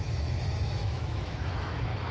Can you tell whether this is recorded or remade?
remade